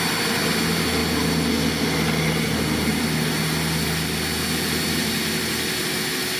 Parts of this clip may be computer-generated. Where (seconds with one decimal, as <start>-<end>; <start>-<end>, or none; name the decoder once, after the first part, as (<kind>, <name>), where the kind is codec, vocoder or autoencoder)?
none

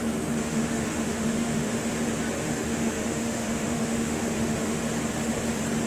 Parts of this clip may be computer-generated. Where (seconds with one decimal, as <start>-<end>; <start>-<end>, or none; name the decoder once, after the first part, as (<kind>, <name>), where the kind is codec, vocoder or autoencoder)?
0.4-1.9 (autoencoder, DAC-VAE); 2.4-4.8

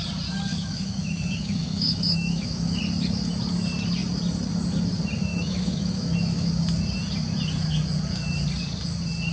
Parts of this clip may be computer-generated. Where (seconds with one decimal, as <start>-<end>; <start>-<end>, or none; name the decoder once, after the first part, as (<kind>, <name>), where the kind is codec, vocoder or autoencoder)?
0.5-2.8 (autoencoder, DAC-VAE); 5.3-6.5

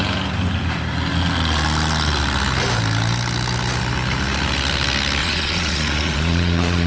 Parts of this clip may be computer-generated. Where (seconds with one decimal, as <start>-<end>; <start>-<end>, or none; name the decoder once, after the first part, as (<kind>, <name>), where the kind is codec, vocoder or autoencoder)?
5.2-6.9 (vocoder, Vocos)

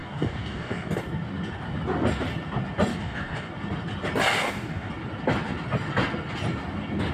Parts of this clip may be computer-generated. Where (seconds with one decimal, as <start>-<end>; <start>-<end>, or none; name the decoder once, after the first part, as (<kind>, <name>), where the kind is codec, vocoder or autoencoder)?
0.0-0.9 (codec, DAC); 2.9-3.5; 4.3-4.9

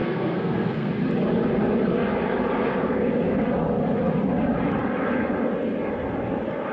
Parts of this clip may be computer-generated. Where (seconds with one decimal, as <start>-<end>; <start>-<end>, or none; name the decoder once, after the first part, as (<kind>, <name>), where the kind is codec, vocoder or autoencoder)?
0.0-0.9 (codec, SNAC); 2.8-3.4

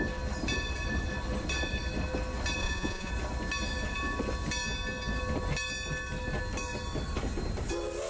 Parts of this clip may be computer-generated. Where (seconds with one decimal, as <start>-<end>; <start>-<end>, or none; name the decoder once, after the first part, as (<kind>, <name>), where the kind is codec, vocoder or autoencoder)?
2.6-3.1 (vocoder, Vocos)

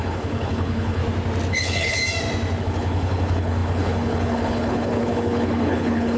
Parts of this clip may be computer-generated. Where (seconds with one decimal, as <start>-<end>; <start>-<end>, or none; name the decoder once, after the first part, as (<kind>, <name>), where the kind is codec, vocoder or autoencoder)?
0.0-1.0 (codec, HILCodec); 1.5-2.0; 2.6-6.2